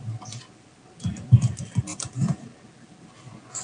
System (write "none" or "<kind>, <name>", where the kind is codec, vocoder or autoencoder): none